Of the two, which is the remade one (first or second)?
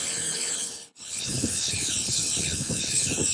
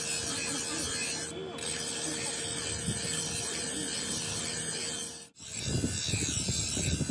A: first